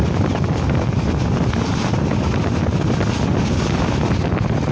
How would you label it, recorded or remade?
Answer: recorded